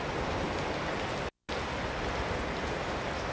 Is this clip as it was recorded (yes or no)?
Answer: yes